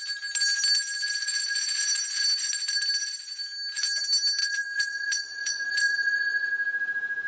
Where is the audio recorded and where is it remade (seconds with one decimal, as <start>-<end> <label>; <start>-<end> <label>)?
0.0-4.4 recorded; 4.4-6.5 remade; 6.5-7.3 recorded